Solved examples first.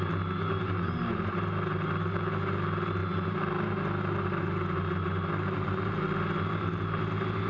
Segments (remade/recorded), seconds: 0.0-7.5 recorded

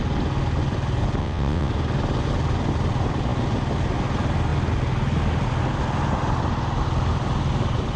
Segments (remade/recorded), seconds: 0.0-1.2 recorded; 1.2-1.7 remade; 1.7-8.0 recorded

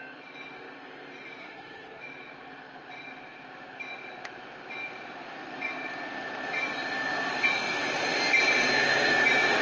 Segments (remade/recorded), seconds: 0.0-1.4 recorded; 1.4-2.0 remade; 2.0-9.6 recorded

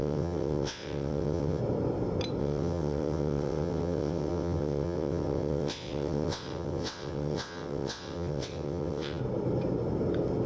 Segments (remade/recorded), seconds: 0.0-1.6 remade; 1.6-2.4 recorded; 2.4-9.2 remade; 9.2-10.5 recorded

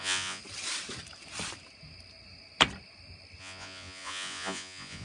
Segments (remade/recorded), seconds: 0.0-0.4 remade; 0.4-3.4 recorded; 3.4-5.0 remade

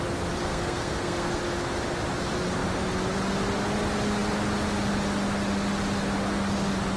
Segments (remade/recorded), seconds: 0.0-0.5 recorded; 0.5-1.4 remade; 1.4-7.0 recorded